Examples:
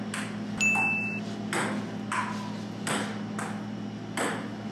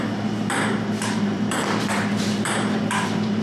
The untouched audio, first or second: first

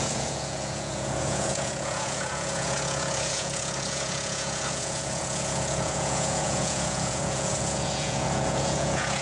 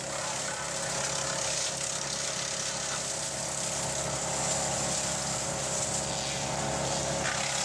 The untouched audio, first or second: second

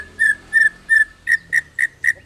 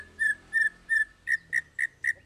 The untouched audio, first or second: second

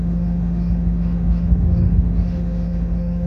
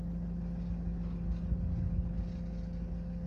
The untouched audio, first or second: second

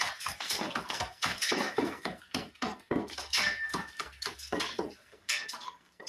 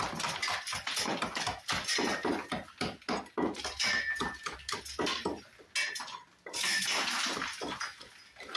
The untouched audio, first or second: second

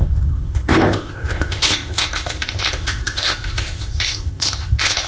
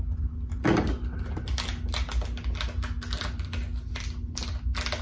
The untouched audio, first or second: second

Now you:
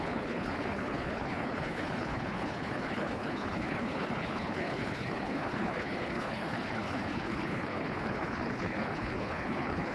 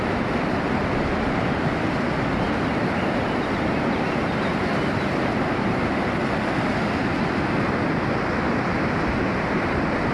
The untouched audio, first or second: second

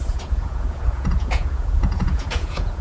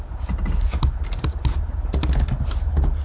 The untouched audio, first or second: second